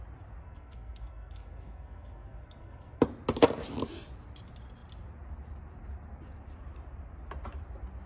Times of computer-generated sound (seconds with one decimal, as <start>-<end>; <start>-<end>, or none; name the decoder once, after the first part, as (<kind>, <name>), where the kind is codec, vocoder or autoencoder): 0.4-3.0 (codec, SNAC)